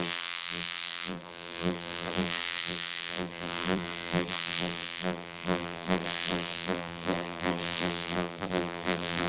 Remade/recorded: remade